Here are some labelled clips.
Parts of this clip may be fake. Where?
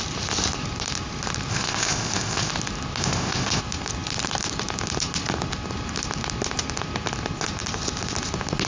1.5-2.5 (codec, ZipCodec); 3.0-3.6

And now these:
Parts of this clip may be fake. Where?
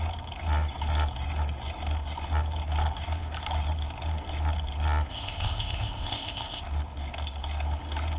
5.1-6.6 (codec, ZipCodec)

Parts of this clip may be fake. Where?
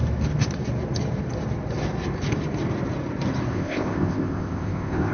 3.5-5.1 (codec, ZipCodec)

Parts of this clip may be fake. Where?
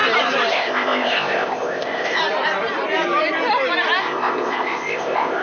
0.5-2.2 (codec, ZipCodec); 4.0-5.4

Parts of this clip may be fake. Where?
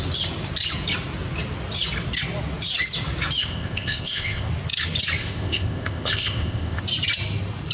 3.4-4.5 (codec, ZipCodec); 5.2-6.8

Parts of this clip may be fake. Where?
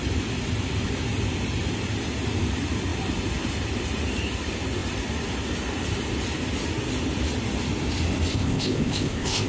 8.3-9.5 (codec, ZipCodec)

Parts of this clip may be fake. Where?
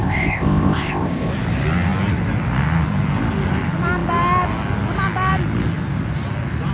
0.0-1.3 (codec, ZipCodec)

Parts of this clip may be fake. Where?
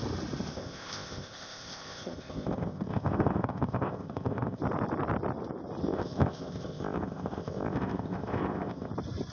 0.5-4.6 (codec, ZipCodec); 5.8-8.9